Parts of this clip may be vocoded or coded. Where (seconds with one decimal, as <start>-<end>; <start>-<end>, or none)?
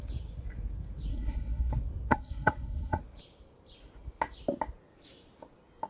1.1-1.7; 2.1-3.0